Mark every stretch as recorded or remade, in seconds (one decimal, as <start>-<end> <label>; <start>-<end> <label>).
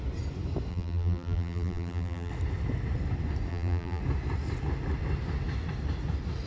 0.0-0.7 recorded; 0.7-2.3 remade; 2.3-3.5 recorded; 3.5-4.0 remade; 4.0-6.5 recorded